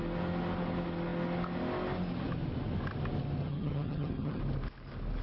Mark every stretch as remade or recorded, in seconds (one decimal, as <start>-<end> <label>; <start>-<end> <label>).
0.0-3.4 recorded; 3.4-4.4 remade; 4.4-5.2 recorded